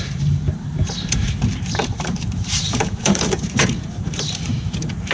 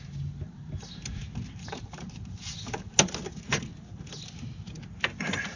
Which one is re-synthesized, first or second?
first